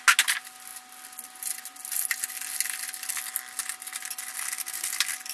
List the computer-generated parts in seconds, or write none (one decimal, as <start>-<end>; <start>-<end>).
none